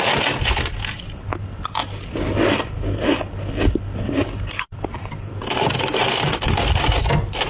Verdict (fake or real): real